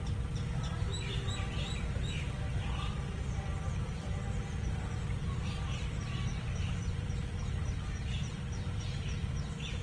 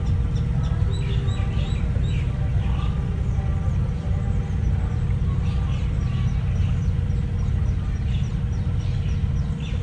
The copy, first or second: first